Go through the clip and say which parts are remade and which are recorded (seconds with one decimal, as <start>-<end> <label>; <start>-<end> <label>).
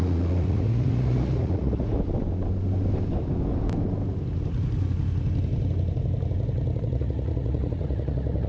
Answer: 0.0-1.9 remade; 1.9-6.8 recorded; 6.8-8.5 remade